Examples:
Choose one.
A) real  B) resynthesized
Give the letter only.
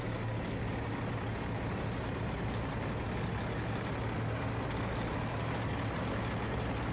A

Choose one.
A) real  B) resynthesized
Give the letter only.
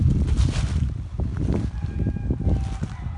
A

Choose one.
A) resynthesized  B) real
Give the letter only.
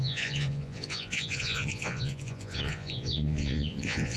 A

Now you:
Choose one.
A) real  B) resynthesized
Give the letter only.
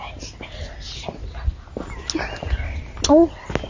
A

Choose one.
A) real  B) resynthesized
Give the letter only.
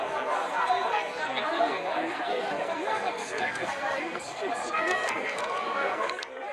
B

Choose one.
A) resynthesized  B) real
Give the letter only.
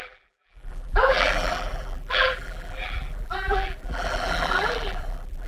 A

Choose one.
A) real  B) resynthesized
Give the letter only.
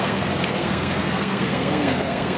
B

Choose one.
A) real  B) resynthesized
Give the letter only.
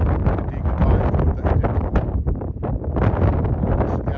A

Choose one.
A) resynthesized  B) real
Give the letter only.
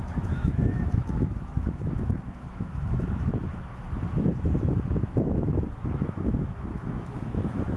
A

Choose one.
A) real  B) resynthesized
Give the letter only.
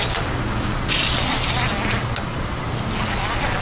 A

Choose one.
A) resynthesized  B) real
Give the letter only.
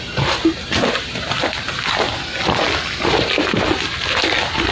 B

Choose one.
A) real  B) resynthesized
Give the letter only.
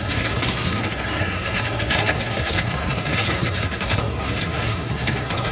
B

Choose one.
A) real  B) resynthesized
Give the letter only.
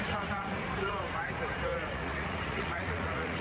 B